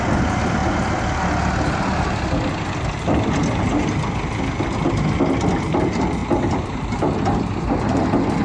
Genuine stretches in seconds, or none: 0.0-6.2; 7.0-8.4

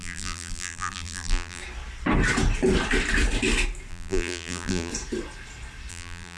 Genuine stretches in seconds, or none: 1.6-3.9; 4.9-5.9

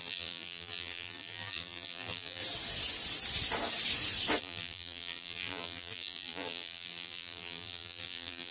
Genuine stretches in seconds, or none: 2.4-4.4

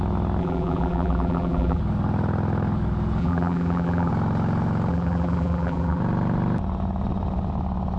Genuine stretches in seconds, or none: 0.0-0.4; 1.8-3.2; 4.1-4.9; 6.0-8.0

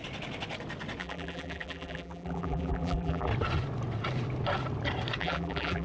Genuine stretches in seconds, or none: 0.0-1.0; 3.3-5.2